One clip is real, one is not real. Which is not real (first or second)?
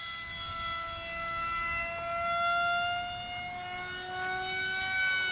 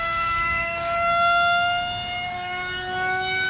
second